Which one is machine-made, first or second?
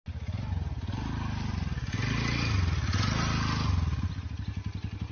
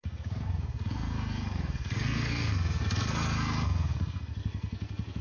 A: second